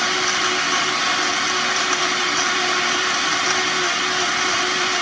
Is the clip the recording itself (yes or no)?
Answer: yes